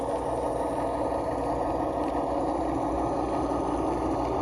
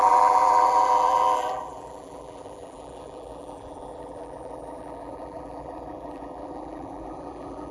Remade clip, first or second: second